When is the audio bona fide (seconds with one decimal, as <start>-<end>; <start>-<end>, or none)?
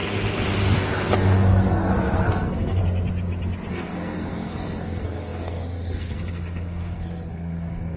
0.0-0.8; 2.8-3.7